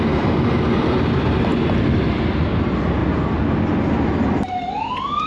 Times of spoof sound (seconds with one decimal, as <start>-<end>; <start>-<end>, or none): none

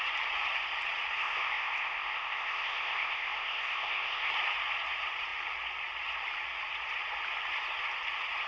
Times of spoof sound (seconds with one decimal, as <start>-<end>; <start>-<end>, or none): 1.2-4.3